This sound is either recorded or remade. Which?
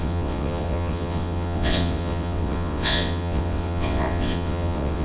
remade